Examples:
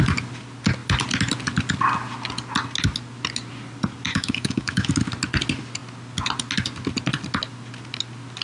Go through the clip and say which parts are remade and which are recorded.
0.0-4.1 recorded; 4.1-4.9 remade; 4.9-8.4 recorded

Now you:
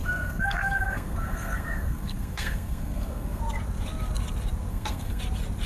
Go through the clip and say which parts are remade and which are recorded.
0.0-3.4 remade; 3.4-4.7 recorded; 4.7-5.2 remade; 5.2-5.7 recorded

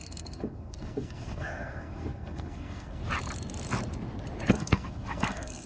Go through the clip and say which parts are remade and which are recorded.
0.0-3.0 remade; 3.0-4.5 recorded; 4.5-5.7 remade

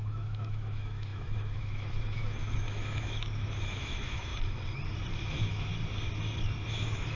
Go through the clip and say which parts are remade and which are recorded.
0.0-4.3 remade; 4.3-5.3 recorded; 5.3-5.7 remade; 5.7-6.7 recorded; 6.7-7.2 remade

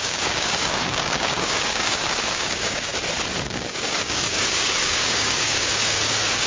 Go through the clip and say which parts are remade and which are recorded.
0.0-2.9 remade; 2.9-3.5 recorded; 3.5-6.5 remade